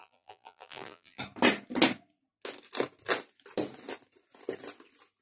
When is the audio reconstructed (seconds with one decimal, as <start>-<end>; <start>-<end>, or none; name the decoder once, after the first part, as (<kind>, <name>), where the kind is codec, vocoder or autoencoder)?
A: 0.0-1.2 (vocoder, BigVGAN v2)